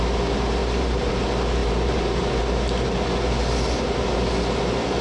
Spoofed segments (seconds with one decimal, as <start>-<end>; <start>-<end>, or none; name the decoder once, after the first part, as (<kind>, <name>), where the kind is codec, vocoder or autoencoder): 0.6-1.1 (vocoder, BigVGAN v2); 1.6-2.4